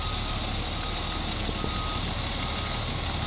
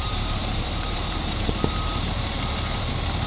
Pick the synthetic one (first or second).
second